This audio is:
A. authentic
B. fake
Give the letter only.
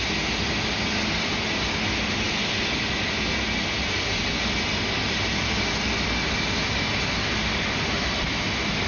A